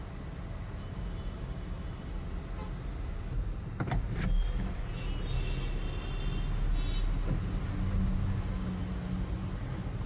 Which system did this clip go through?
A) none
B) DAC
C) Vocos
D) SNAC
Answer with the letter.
A